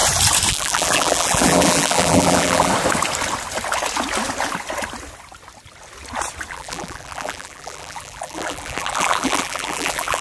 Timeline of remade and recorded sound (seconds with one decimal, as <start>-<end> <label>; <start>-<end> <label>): 0.0-0.5 recorded; 0.5-2.7 remade; 2.7-6.5 recorded; 6.5-10.2 remade